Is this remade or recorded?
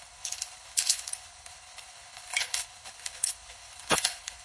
remade